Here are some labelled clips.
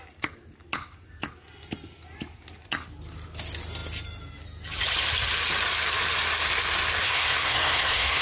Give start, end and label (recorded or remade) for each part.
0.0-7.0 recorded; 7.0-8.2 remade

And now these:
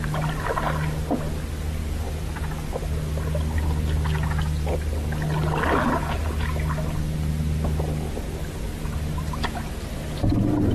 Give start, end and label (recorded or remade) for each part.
0.0-10.7 recorded

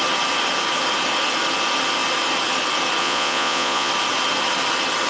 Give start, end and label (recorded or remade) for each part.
0.0-3.0 recorded; 3.0-3.9 remade; 3.9-5.1 recorded

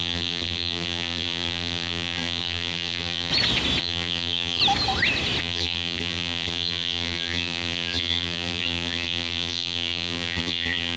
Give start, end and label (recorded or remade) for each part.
0.0-3.3 remade; 3.3-3.8 recorded; 3.8-4.6 remade; 4.6-5.4 recorded; 5.4-11.0 remade